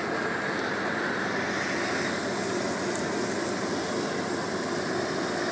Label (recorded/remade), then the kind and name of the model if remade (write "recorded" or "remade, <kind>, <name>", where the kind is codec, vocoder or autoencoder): recorded